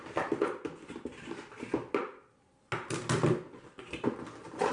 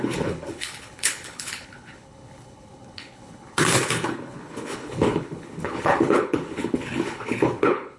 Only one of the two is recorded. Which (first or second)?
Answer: first